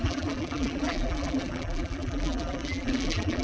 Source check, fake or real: fake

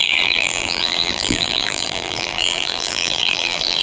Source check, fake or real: fake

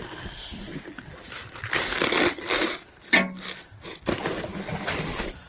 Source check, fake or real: real